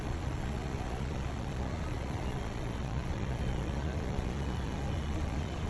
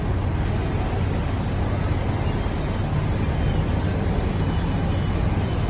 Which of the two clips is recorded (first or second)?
second